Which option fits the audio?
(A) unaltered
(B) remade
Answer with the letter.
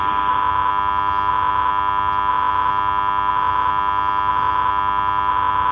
A